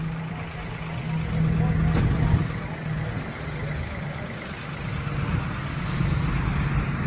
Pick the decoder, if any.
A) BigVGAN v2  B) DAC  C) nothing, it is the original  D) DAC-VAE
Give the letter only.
C